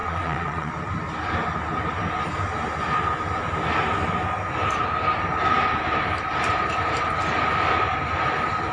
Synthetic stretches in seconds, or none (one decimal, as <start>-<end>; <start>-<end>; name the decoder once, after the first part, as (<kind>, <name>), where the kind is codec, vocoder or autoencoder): 0.0-0.7 (vocoder, Vocos)